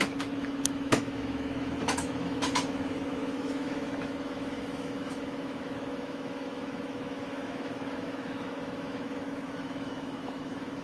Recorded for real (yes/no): no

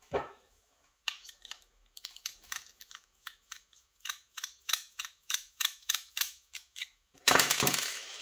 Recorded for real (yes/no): no